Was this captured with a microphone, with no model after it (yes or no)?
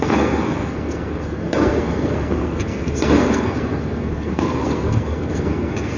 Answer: no